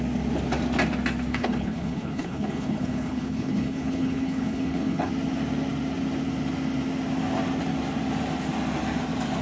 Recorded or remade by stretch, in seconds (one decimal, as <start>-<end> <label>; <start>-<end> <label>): 0.0-1.3 recorded; 1.3-5.1 remade; 5.1-9.4 recorded